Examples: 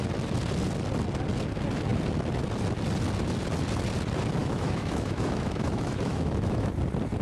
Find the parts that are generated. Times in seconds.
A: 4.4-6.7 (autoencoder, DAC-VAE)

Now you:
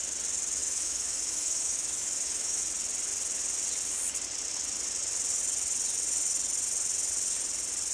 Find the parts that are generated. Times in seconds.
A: 0.6-2.6 (autoencoder, DAC-VAE)

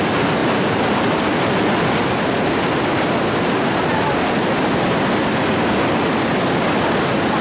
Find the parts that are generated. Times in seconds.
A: none

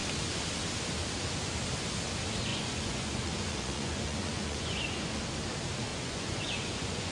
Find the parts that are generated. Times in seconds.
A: 2.5-5.2 (vocoder, Vocos); 5.9-7.1

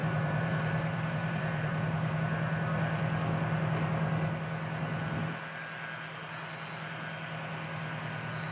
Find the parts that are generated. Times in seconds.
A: 0.0-2.2 (vocoder, BigVGAN v2)

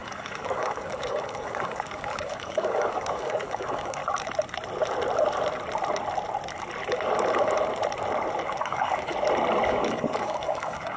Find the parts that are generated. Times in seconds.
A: 0.0-4.0 (codec, DAC); 8.6-9.1; 9.7-11.0

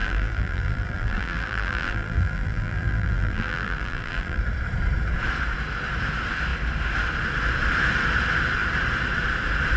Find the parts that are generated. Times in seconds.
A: 0.0-4.4 (vocoder, BigVGAN v2)